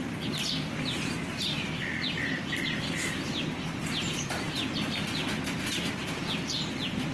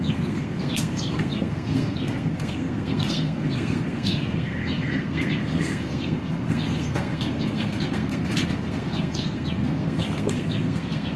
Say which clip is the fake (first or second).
second